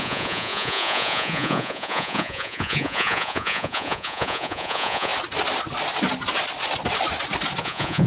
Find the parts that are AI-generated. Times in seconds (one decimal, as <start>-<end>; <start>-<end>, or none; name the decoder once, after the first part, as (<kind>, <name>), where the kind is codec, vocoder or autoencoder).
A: 0.0-5.1 (vocoder, Vocos); 7.6-8.1